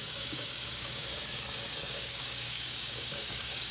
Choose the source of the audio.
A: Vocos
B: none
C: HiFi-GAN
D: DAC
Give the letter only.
D